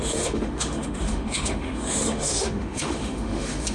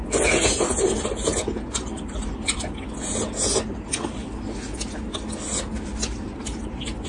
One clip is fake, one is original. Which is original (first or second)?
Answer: second